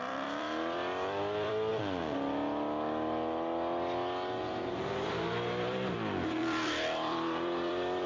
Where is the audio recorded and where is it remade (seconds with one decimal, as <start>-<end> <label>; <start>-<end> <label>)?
0.0-1.7 remade; 1.7-5.1 recorded; 5.1-8.1 remade